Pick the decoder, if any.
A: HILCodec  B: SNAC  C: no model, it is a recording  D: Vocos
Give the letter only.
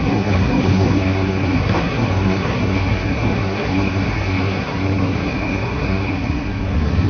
B